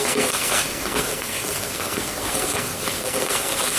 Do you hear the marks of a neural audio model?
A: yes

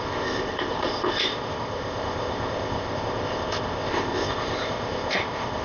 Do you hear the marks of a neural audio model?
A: yes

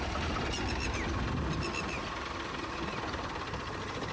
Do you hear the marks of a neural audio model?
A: no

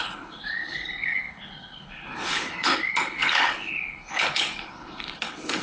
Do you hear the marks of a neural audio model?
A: yes